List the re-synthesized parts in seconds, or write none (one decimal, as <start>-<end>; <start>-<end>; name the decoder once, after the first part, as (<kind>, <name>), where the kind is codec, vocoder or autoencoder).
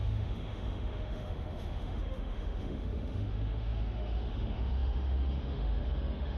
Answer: 0.0-6.4 (autoencoder, DAC-VAE)